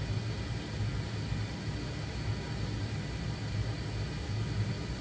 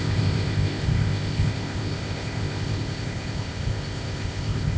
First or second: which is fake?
second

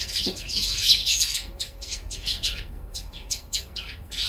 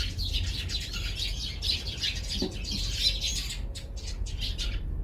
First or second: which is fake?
first